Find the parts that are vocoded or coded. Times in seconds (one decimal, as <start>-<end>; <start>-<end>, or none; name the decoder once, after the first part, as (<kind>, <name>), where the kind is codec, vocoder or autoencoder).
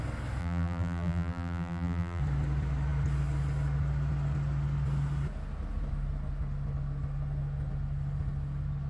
0.4-2.2 (vocoder, BigVGAN v2)